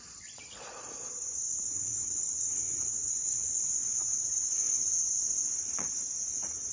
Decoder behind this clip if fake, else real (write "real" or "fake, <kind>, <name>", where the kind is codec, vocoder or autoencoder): fake, vocoder, Vocos